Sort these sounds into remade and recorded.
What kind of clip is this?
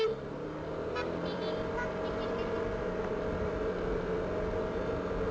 recorded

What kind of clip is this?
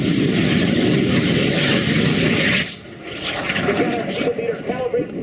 recorded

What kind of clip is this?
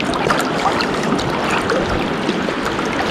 recorded